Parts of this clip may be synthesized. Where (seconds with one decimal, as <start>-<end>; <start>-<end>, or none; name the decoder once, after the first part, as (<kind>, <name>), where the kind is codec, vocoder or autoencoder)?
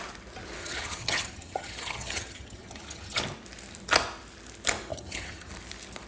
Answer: 0.6-3.2 (vocoder, HiFi-GAN); 4.9-5.5